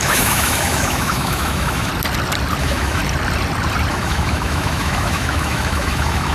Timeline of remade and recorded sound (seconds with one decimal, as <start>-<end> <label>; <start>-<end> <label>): 0.0-1.9 remade; 1.9-2.6 recorded; 2.6-3.0 remade; 3.0-3.9 recorded; 3.9-6.3 remade